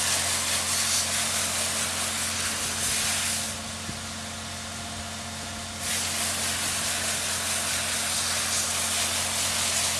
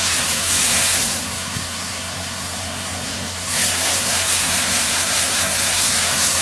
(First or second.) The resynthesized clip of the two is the second